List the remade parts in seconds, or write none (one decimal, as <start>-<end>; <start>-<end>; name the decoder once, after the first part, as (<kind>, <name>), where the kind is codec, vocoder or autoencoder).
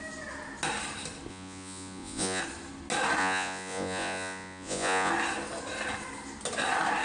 1.3-2.4 (vocoder, Vocos); 3.2-5.1